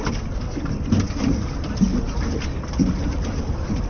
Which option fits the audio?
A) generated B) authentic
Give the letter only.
B